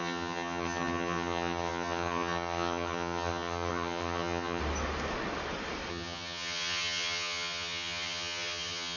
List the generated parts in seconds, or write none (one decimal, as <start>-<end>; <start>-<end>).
0.0-4.6; 5.9-9.0